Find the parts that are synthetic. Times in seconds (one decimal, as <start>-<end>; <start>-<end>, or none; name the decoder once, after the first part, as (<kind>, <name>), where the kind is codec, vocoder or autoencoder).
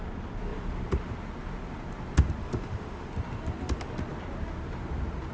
2.4-3.1 (autoencoder, DAC-VAE)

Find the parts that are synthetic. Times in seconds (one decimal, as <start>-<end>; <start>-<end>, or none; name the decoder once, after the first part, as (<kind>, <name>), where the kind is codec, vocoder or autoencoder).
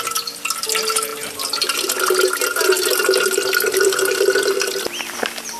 none